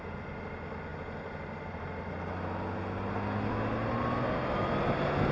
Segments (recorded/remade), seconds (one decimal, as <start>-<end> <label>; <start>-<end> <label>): 0.0-5.3 recorded